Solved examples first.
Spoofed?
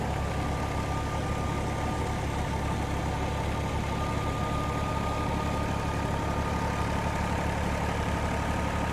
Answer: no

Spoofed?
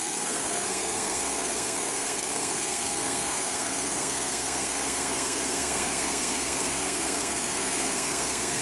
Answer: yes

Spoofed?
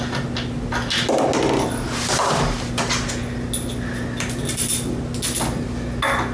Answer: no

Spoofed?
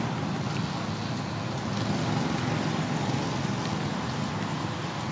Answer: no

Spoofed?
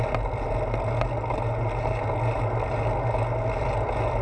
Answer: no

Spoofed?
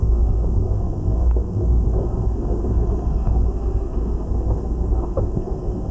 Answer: yes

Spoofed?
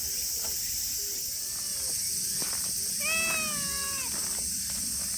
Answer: no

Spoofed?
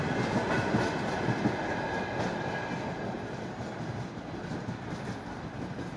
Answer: no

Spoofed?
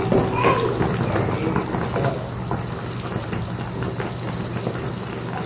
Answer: no